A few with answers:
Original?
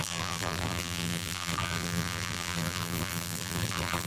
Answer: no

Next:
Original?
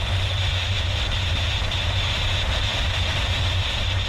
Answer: no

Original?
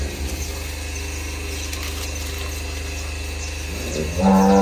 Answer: yes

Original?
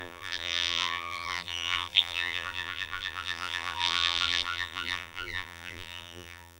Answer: no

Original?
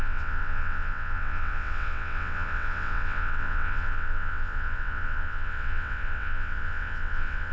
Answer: no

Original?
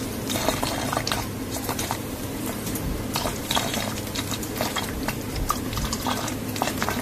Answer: no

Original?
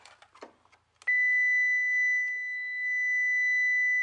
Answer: yes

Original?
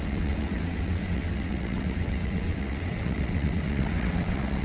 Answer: no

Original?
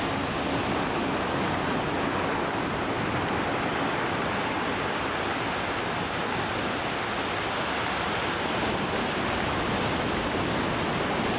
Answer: yes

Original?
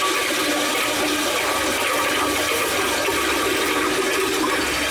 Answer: yes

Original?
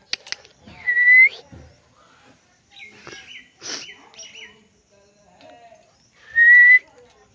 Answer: yes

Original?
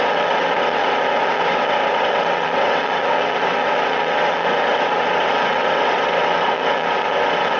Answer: no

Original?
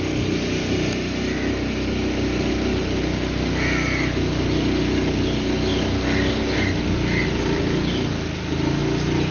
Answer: yes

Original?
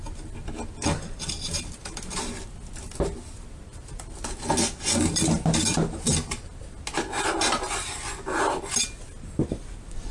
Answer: yes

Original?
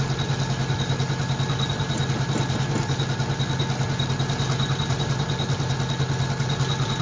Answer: yes